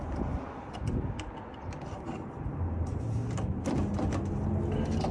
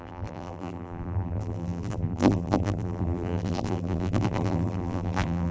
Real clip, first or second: first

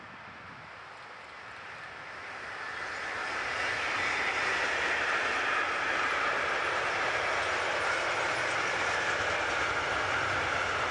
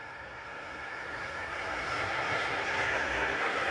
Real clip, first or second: first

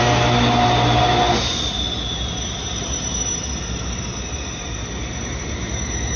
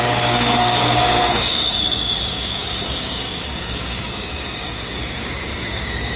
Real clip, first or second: first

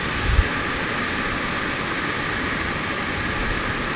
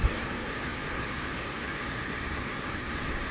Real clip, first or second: first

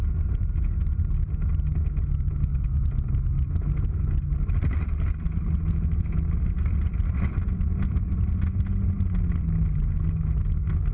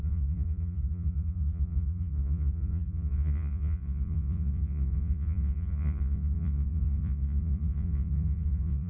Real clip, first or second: first